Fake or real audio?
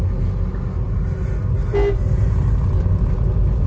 real